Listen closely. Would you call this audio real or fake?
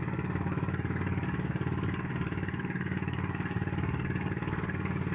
fake